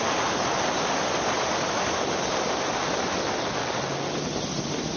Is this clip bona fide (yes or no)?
yes